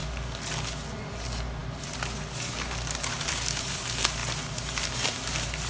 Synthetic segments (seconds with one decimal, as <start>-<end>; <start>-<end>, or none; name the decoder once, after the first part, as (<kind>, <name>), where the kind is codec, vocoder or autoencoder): none